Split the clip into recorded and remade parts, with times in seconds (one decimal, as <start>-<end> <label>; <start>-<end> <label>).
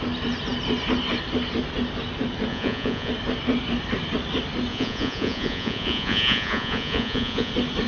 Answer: 0.0-2.5 recorded; 2.5-3.1 remade; 3.1-4.7 recorded; 4.7-7.5 remade; 7.5-7.9 recorded